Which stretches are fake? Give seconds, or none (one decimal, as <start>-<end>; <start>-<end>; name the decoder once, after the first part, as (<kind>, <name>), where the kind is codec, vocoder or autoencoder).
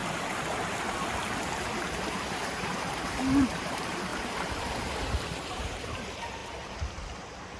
1.5-6.4 (vocoder, BigVGAN v2)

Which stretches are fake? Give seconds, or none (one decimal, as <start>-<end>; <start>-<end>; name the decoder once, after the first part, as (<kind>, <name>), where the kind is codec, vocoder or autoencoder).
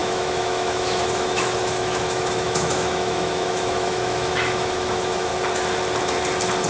0.0-5.3 (autoencoder, DAC-VAE)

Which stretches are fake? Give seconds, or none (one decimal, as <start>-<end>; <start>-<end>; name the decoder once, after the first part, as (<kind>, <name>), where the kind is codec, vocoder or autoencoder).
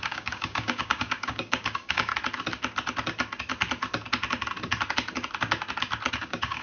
0.0-2.1 (codec, DAC); 6.1-6.6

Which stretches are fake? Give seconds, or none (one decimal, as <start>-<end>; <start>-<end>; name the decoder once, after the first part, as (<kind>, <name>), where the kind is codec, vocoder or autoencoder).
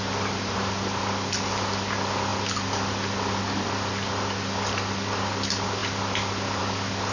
5.8-6.6 (vocoder, BigVGAN v2)